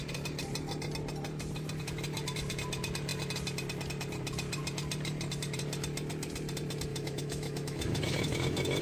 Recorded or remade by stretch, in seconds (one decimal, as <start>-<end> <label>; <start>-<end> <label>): 0.0-6.9 recorded; 6.9-8.8 remade